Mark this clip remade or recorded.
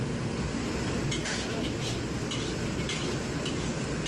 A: recorded